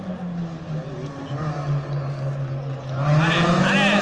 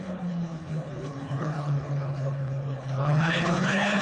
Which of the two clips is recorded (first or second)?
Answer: first